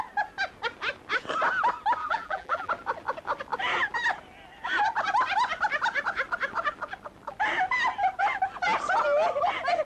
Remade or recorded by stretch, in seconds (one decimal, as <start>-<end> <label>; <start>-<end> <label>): 0.0-2.0 recorded; 2.0-2.7 remade; 2.7-9.8 recorded